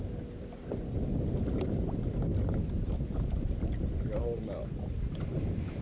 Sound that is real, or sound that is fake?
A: real